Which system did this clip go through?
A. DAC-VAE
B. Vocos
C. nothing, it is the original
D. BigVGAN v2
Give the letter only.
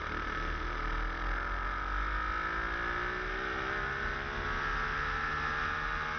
C